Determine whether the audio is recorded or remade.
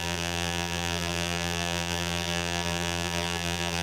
remade